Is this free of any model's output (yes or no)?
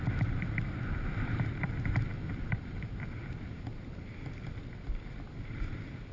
yes